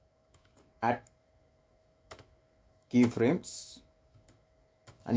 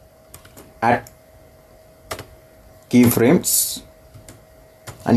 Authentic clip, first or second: second